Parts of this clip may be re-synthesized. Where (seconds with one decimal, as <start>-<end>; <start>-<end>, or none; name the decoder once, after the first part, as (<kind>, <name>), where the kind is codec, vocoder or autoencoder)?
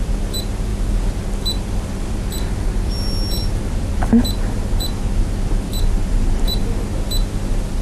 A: 0.0-0.7 (vocoder, BigVGAN v2); 1.2-6.6